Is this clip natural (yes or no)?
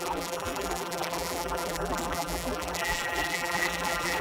no